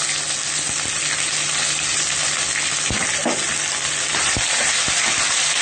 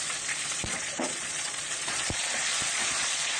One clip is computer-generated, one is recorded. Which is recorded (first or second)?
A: first